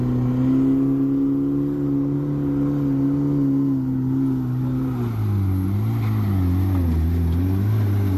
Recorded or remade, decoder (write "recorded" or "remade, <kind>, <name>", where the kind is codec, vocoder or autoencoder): recorded